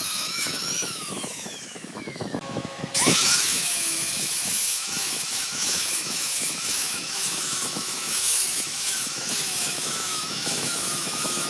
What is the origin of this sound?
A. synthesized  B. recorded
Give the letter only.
A